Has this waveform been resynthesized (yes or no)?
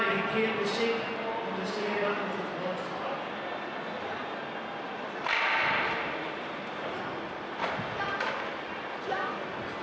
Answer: no